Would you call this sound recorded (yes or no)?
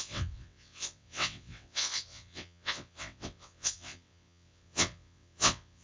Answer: no